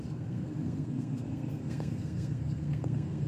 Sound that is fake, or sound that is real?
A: fake